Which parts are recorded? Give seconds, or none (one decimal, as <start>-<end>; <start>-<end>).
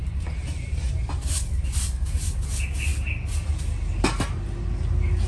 0.9-5.3